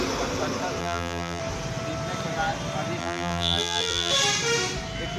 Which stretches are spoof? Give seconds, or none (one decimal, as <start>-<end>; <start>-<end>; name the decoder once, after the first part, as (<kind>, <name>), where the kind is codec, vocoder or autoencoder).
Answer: 0.8-1.4 (vocoder, BigVGAN v2); 3.0-4.1